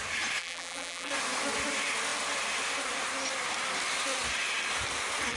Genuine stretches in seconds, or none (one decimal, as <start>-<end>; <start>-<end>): 0.0-0.4; 1.1-5.4